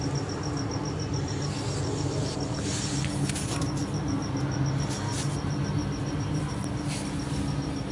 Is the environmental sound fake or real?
real